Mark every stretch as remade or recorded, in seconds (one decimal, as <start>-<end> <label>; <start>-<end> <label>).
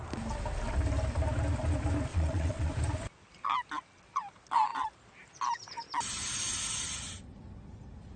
0.0-2.1 recorded; 2.1-2.7 remade; 2.7-8.2 recorded